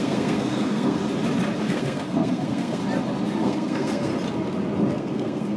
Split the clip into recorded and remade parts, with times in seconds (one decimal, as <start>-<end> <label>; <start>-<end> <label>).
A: 0.0-1.0 remade; 1.0-1.6 recorded; 1.6-2.8 remade; 2.8-3.4 recorded; 3.4-4.1 remade; 4.1-4.9 recorded; 4.9-5.6 remade